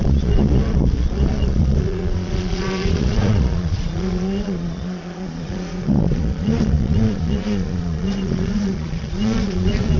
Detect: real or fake fake